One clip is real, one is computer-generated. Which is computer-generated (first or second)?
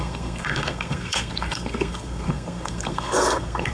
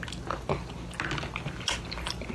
first